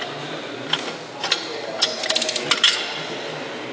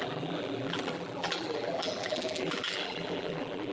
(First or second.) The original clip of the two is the first